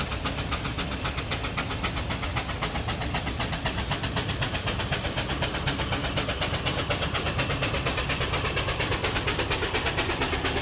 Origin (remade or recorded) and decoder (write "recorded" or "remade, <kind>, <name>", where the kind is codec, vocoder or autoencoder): recorded